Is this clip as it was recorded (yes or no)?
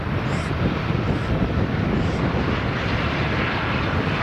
yes